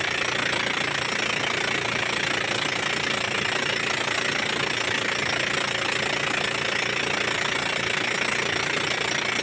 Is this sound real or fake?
real